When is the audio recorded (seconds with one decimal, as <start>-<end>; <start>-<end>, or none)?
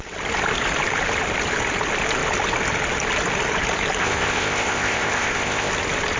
0.0-4.0; 5.7-6.2